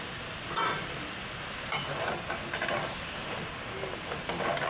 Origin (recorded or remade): recorded